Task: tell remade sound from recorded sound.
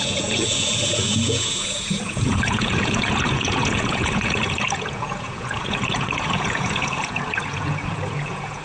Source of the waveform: remade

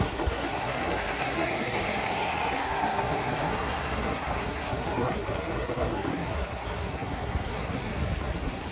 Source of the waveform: remade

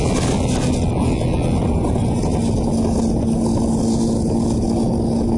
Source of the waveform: recorded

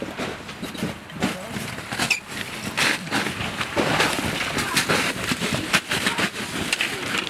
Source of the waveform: recorded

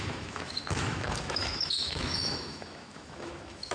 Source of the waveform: remade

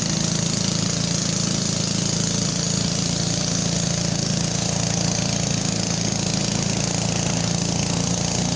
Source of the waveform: recorded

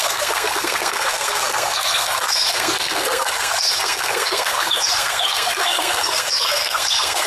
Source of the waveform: remade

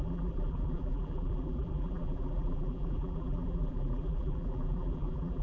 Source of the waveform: remade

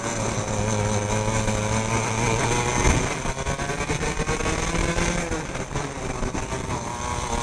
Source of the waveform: recorded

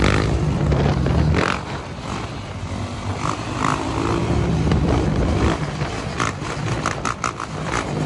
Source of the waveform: remade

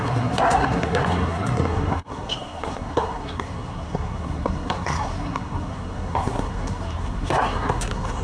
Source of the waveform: remade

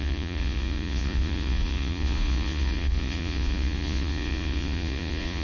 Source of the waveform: remade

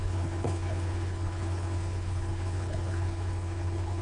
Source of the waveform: remade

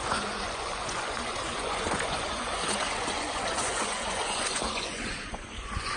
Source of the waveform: remade